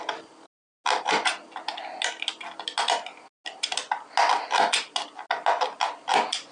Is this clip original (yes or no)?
yes